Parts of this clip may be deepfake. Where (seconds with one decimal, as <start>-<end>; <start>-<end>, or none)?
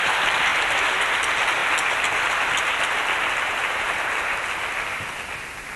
none